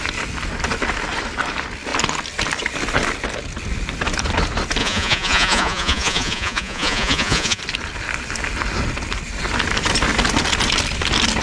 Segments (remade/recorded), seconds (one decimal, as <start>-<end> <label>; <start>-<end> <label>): 0.0-4.8 recorded; 4.8-7.6 remade; 7.6-11.4 recorded